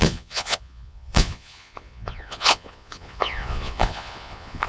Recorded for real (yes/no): no